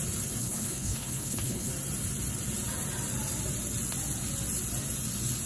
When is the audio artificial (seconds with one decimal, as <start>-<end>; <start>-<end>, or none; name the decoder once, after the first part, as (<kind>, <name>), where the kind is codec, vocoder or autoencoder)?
0.4-1.7 (codec, HILCodec)

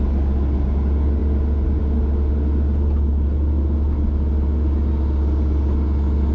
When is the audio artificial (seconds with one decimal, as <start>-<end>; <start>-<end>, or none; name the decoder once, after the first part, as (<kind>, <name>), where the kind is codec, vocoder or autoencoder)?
none

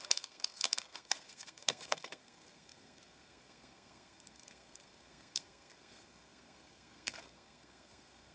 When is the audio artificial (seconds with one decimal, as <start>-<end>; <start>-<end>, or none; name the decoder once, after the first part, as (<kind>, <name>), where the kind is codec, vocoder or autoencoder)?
0.0-8.3 (codec, SNAC)

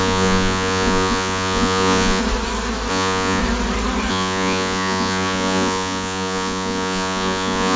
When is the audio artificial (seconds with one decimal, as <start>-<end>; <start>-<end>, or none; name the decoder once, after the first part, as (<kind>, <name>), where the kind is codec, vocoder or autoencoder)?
0.0-2.2 (vocoder, Vocos); 2.9-3.4; 4.1-7.8

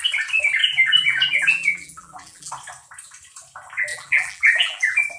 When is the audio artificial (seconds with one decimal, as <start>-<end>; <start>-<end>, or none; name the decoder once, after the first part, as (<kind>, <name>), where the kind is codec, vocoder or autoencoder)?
0.6-2.5 (vocoder, BigVGAN v2); 3.9-5.2

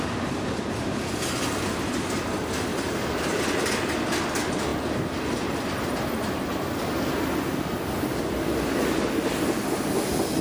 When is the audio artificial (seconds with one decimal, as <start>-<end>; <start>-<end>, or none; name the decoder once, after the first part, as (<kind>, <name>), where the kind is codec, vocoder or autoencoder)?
2.7-3.4 (vocoder, BigVGAN v2)